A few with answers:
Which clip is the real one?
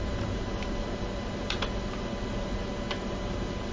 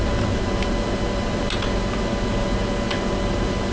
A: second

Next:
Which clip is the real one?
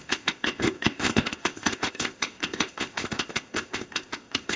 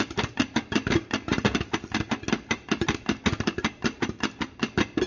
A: second